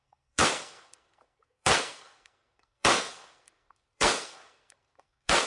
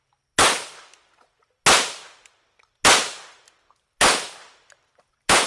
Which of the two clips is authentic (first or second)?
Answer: second